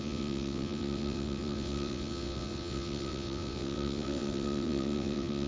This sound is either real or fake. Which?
fake